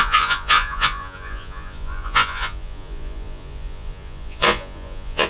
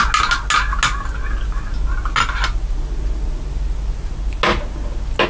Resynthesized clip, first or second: first